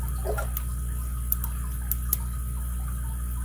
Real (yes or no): yes